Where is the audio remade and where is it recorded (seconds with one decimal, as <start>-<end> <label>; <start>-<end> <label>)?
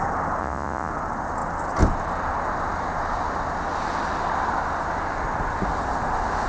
0.0-0.4 recorded; 0.4-0.9 remade; 0.9-6.5 recorded